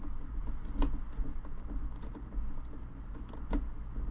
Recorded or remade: recorded